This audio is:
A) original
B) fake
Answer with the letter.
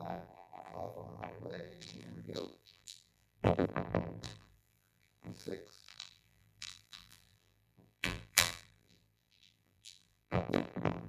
B